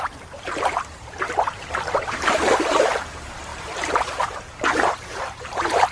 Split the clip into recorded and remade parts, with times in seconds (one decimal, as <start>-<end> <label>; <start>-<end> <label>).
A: 0.0-5.9 remade